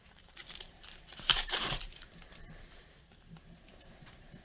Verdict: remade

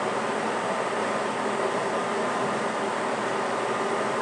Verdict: recorded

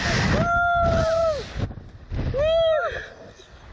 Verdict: recorded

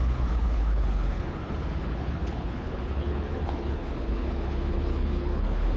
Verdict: remade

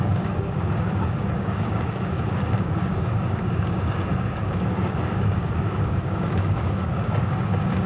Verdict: remade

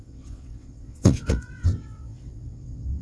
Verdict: remade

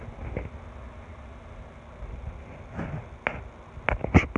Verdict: recorded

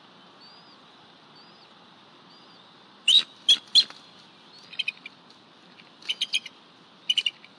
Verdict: recorded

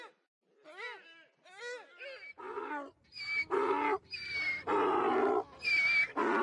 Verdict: recorded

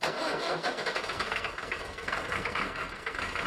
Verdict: remade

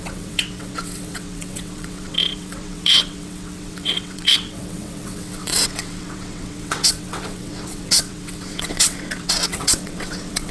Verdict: remade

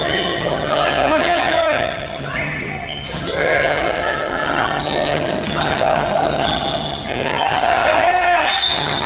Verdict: remade